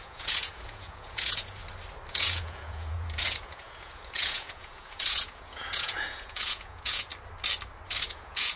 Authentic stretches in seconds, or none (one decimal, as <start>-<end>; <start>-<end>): 1.6-2.1; 7.1-8.0